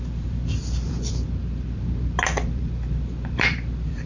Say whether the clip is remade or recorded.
remade